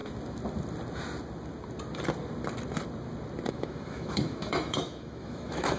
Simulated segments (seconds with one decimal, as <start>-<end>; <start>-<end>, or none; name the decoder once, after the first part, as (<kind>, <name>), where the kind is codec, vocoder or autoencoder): 3.5-5.8 (autoencoder, DAC-VAE)